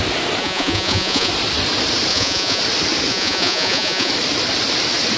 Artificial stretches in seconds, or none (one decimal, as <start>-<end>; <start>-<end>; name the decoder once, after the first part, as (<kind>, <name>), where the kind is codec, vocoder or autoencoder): 0.4-1.3 (vocoder, Vocos); 2.1-2.6; 3.1-4.1